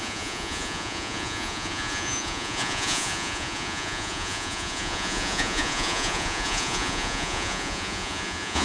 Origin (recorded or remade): remade